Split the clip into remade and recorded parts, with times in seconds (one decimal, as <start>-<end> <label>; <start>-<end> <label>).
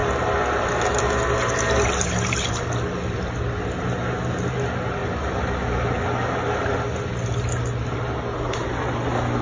0.0-9.4 recorded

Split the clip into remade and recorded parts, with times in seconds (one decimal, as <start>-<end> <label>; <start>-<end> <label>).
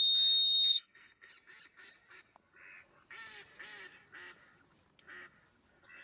0.0-0.7 recorded; 0.7-1.3 remade; 1.3-6.0 recorded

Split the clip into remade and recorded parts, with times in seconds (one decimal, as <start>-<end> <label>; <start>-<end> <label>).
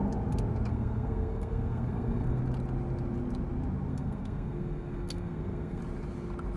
0.0-0.7 recorded; 0.7-2.4 remade; 2.4-3.9 recorded; 3.9-5.8 remade; 5.8-6.6 recorded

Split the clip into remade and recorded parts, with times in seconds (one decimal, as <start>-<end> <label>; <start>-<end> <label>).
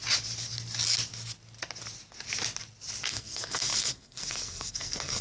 0.0-3.1 recorded; 3.1-5.2 remade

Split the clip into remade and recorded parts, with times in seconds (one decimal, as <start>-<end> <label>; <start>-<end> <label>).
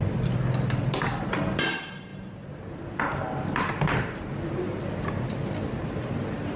0.0-6.6 recorded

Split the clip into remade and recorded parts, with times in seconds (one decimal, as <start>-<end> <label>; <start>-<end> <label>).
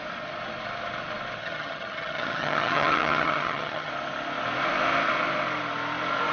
0.0-1.4 recorded; 1.4-3.9 remade; 3.9-6.3 recorded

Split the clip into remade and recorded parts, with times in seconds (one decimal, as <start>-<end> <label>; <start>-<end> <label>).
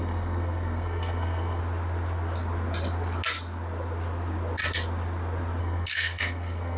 0.0-1.6 remade; 1.6-5.6 recorded; 5.6-6.8 remade